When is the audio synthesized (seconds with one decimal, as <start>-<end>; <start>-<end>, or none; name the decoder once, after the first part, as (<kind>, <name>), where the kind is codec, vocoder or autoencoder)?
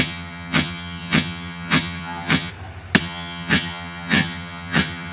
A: 0.0-2.5 (vocoder, HiFi-GAN); 3.0-5.1